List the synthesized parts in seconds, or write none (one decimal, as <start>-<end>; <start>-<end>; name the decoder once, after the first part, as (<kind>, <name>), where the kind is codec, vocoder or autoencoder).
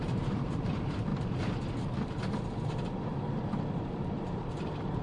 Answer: 0.0-1.1 (vocoder, BigVGAN v2); 3.1-5.0